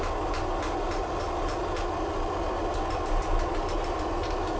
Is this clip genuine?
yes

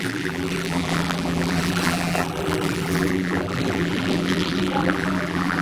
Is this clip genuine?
no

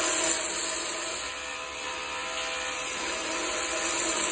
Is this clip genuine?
yes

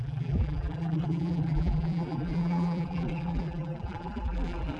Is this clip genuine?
no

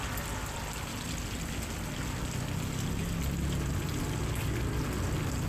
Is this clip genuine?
yes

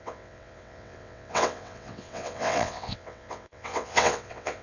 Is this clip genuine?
no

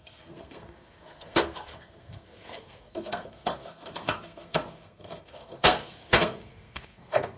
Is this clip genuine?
no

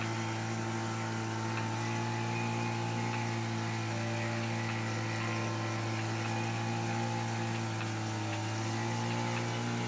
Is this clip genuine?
yes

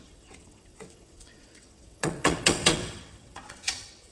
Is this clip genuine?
no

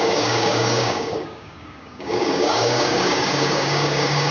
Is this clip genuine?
no